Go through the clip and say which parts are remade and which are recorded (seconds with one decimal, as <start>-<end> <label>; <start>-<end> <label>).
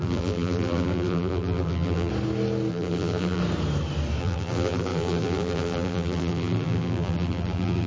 0.0-2.1 remade; 2.1-2.7 recorded; 2.7-3.4 remade; 3.4-4.2 recorded; 4.2-7.9 remade